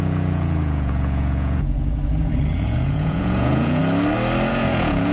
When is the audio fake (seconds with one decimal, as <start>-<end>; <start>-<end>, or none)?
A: 0.0-3.8; 4.5-5.1